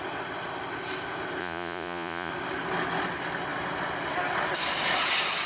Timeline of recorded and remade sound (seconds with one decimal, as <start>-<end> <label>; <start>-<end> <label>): 0.0-1.4 recorded; 1.4-2.3 remade; 2.3-5.5 recorded